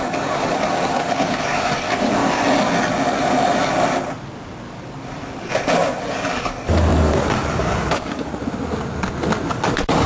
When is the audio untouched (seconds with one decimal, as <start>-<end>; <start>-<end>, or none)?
2.2-6.1; 8.3-9.5